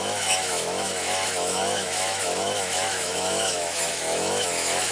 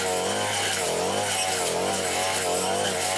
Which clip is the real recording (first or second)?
second